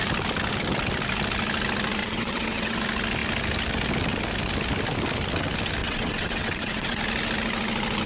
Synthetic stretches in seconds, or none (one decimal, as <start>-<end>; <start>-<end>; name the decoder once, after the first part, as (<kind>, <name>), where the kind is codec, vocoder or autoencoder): 2.0-2.8 (vocoder, WaveNeXt); 5.8-7.0